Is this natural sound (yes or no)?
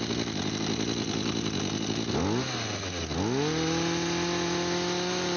yes